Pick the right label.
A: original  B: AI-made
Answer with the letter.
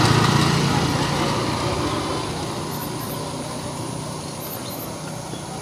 A